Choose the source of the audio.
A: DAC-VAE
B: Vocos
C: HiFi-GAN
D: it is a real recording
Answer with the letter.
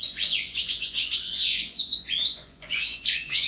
B